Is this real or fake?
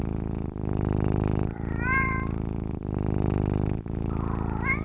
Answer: real